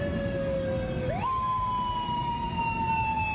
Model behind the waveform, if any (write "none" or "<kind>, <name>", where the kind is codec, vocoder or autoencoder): none